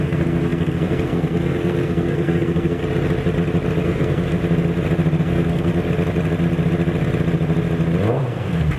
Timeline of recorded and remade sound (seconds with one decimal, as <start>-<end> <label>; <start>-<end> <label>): 0.0-2.8 remade; 2.8-3.8 recorded; 3.8-4.4 remade; 4.4-5.2 recorded; 5.2-5.7 remade; 5.7-8.1 recorded; 8.1-8.8 remade